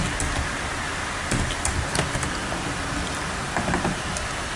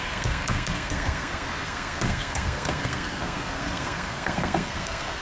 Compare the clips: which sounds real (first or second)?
first